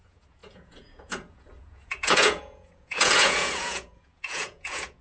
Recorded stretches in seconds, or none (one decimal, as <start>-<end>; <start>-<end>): none